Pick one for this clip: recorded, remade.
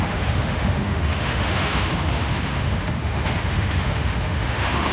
remade